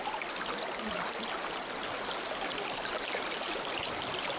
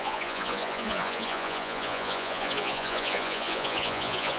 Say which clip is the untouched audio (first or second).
first